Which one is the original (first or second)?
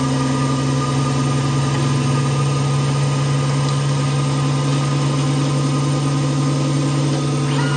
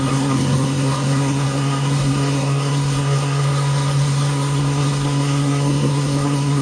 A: first